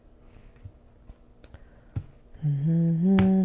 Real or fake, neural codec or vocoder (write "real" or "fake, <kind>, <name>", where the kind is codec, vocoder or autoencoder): real